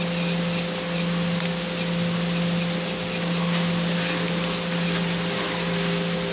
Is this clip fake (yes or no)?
no